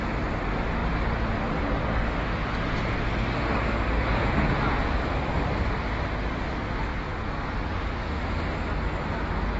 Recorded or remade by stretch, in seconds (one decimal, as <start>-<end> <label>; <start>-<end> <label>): 0.0-4.1 recorded; 4.1-4.9 remade; 4.9-6.9 recorded; 6.9-8.2 remade; 8.2-9.6 recorded